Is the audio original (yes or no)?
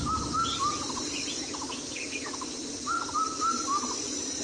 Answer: yes